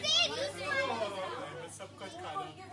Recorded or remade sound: recorded